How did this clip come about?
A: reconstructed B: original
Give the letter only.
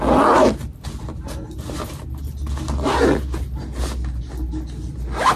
B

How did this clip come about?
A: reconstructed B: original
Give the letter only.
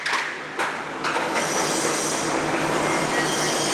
B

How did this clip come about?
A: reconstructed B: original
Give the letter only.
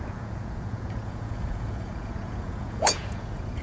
A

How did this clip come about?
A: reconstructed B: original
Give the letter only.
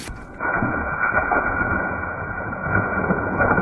A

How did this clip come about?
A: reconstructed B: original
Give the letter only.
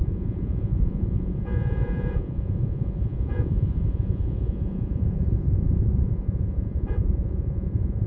A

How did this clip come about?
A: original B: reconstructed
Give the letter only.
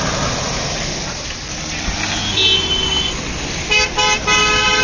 A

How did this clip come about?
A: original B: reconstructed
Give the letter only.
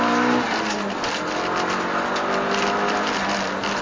A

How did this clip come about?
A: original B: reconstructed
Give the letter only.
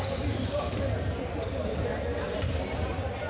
A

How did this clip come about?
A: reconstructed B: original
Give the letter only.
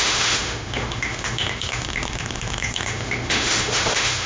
A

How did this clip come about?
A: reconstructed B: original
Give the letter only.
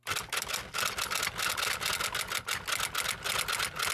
B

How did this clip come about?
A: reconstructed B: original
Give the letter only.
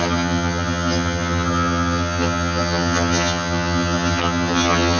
A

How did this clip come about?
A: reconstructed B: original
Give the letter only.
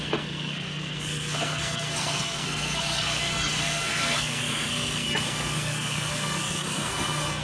A